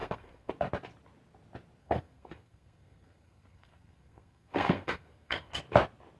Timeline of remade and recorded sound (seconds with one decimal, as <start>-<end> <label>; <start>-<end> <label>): 0.0-0.5 remade; 0.5-1.8 recorded; 1.8-5.5 remade; 5.5-6.2 recorded